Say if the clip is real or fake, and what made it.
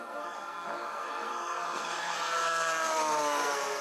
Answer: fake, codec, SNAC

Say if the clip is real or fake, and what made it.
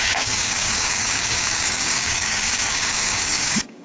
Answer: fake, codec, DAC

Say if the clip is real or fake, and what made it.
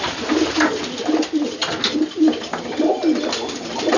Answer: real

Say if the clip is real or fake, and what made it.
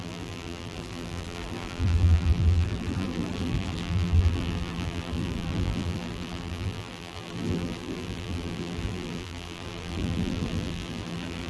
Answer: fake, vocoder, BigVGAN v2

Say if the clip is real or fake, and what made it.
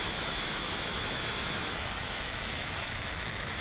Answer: fake, autoencoder, DAC-VAE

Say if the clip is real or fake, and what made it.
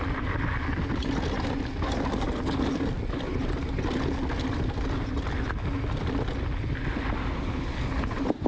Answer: real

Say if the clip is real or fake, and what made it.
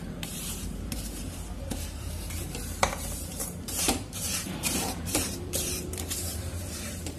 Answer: fake, vocoder, BigVGAN v2